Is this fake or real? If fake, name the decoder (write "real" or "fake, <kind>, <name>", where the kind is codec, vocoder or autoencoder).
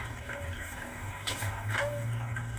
fake, codec, DAC